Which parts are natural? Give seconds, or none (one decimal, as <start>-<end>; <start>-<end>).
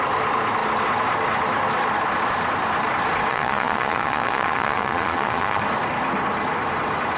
0.0-3.3; 5.6-7.2